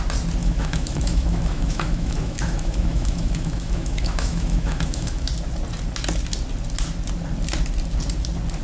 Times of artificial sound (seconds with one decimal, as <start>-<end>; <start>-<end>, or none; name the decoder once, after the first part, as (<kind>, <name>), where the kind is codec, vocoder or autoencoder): 0.4-5.3 (autoencoder, DAC-VAE)